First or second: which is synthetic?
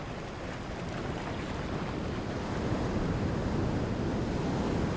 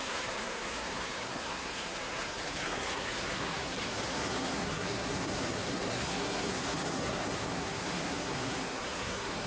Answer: second